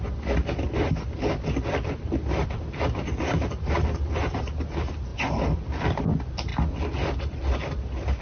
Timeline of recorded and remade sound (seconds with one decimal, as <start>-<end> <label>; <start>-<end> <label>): 0.0-0.4 recorded; 0.4-4.1 remade; 4.1-5.1 recorded; 5.1-6.0 remade; 6.0-8.2 recorded